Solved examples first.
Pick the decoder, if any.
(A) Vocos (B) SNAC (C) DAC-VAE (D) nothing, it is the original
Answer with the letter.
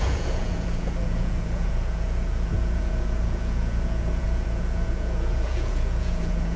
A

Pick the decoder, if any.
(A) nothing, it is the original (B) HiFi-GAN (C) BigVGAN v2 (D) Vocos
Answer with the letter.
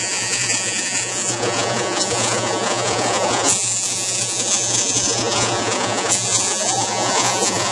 D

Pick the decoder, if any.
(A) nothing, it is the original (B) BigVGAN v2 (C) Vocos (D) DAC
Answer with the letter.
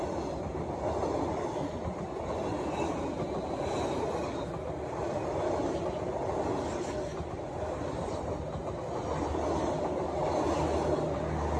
A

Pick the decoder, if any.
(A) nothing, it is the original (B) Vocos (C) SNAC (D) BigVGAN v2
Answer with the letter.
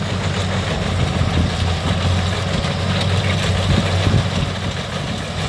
A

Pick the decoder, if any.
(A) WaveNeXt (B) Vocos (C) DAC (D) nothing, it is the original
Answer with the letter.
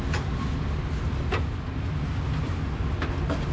D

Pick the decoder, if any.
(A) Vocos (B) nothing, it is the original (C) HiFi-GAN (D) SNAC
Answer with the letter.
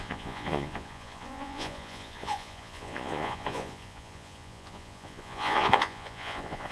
A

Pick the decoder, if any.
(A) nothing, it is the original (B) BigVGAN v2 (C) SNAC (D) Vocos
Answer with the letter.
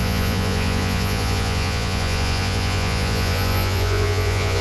D